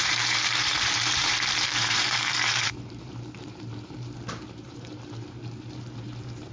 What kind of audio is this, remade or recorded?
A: remade